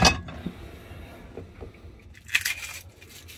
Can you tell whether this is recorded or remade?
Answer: recorded